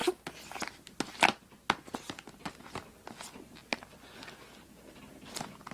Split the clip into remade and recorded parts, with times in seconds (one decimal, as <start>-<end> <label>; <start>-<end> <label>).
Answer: 0.0-5.7 recorded